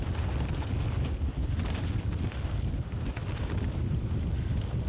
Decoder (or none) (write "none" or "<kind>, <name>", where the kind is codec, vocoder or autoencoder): none